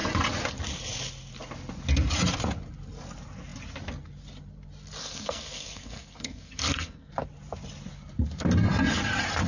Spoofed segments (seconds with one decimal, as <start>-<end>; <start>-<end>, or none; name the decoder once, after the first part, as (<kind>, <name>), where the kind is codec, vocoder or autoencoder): 5.0-7.1 (codec, SNAC)